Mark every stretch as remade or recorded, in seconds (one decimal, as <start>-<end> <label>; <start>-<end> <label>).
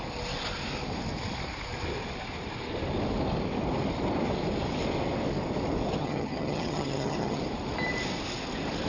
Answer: 0.0-6.0 recorded; 6.0-7.4 remade; 7.4-8.9 recorded